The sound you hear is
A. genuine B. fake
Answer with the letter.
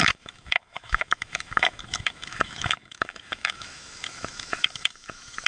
B